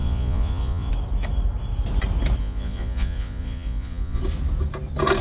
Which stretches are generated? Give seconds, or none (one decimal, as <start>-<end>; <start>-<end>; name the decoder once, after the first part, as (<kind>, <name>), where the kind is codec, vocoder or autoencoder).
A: 0.0-0.9 (vocoder, Vocos); 2.4-4.2